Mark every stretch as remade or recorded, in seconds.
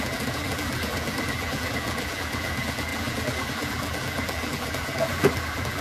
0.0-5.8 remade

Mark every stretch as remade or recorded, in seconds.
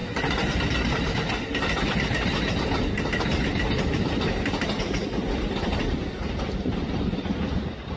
0.0-8.0 recorded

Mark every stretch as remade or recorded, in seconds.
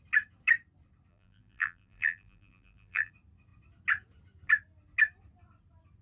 0.0-1.1 recorded; 1.1-3.1 remade; 3.1-6.0 recorded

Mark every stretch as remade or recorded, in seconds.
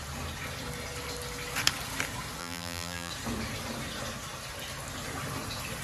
0.0-2.4 recorded; 2.4-3.1 remade; 3.1-5.8 recorded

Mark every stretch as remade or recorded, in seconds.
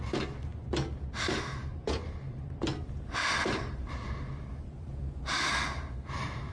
0.0-1.6 recorded; 1.6-5.5 remade; 5.5-6.5 recorded